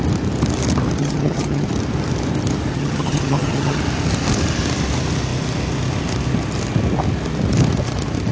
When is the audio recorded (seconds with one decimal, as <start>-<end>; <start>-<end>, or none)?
0.0-1.0; 1.7-2.7; 3.8-8.3